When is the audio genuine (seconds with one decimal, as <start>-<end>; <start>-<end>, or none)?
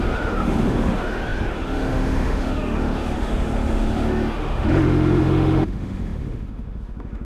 none